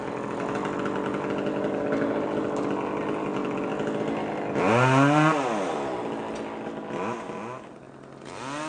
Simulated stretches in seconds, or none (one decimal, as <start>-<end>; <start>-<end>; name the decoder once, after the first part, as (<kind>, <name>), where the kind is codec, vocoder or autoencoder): none